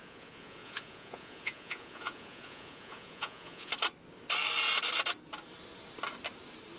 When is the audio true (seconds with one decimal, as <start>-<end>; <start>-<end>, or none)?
3.7-6.8